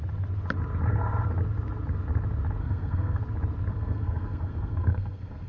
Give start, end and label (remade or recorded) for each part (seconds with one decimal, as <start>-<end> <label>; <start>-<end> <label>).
0.0-2.6 recorded; 2.6-3.2 remade; 3.2-3.7 recorded; 3.7-5.5 remade